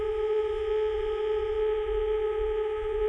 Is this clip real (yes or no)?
no